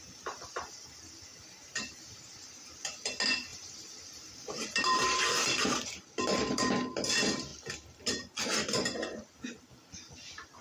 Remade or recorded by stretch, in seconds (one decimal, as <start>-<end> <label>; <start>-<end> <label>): 0.0-1.3 recorded; 1.3-2.9 remade; 2.9-3.5 recorded; 3.5-7.1 remade; 7.1-10.6 recorded